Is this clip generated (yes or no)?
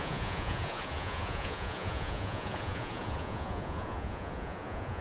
yes